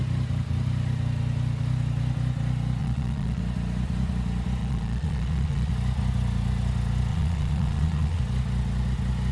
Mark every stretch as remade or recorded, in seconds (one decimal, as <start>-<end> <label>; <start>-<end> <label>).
0.0-2.8 recorded; 2.8-3.4 remade; 3.4-4.6 recorded; 4.6-5.7 remade; 5.7-7.1 recorded; 7.1-8.2 remade; 8.2-9.3 recorded

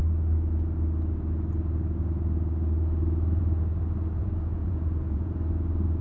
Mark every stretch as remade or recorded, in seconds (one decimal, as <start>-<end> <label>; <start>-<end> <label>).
0.0-4.2 recorded; 4.2-5.3 remade; 5.3-6.0 recorded

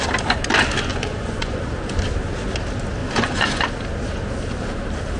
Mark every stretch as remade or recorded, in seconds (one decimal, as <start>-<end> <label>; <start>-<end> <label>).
0.0-0.9 recorded; 0.9-1.6 remade; 1.6-3.0 recorded; 3.0-3.6 remade; 3.6-5.2 recorded

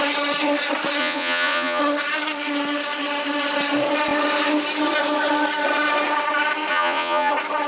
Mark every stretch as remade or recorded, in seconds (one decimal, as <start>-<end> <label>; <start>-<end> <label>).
0.0-1.0 recorded; 1.0-1.8 remade; 1.8-6.7 recorded; 6.7-7.3 remade; 7.3-7.7 recorded

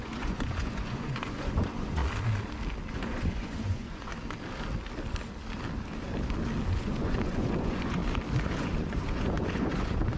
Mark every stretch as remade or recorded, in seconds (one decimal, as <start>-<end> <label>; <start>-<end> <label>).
0.0-2.0 remade; 2.0-2.9 recorded; 2.9-4.1 remade; 4.1-6.8 recorded; 6.8-8.0 remade; 8.0-8.5 recorded; 8.5-10.2 remade

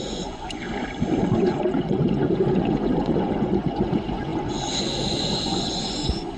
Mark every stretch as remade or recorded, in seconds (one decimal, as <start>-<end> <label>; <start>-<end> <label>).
0.0-0.6 remade; 0.6-1.4 recorded; 1.4-6.4 remade

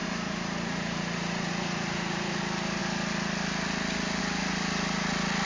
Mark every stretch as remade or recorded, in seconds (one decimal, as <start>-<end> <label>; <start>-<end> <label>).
0.0-2.4 remade; 2.4-5.4 recorded